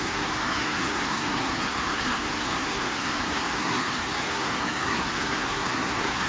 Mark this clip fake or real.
fake